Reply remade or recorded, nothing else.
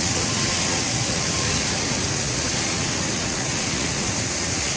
remade